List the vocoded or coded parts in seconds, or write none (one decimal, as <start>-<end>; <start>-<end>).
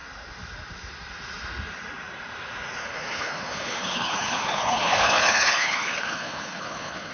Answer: 2.8-7.1